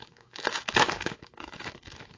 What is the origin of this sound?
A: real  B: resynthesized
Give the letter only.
B